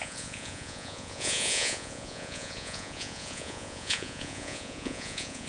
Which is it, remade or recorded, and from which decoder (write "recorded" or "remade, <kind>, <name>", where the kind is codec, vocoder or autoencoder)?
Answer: remade, vocoder, Vocos